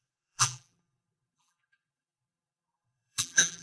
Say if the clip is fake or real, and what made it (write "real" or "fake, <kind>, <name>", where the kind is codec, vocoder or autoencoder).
fake, vocoder, BigVGAN v2